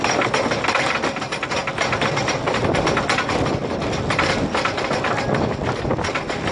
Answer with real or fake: real